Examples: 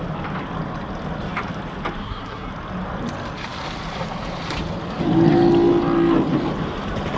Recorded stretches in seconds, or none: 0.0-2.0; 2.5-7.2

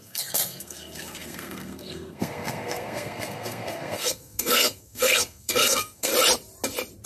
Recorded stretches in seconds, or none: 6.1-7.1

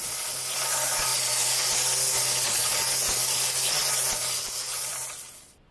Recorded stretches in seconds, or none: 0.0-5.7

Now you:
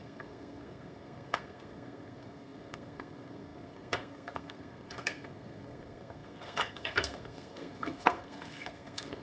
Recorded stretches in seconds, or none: none

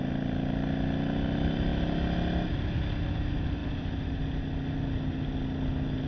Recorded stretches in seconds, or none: 0.0-6.1

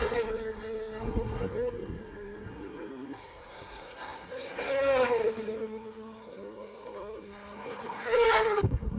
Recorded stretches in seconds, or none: none

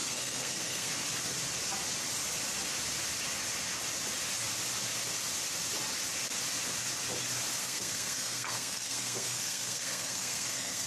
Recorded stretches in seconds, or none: 0.9-7.6